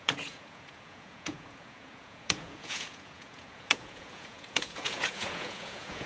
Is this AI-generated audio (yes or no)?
yes